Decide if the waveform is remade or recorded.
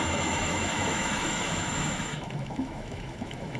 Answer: remade